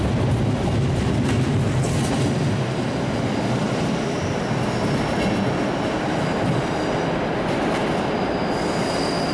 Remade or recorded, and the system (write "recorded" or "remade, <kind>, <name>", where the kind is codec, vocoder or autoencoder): recorded